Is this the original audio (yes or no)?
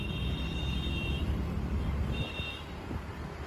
yes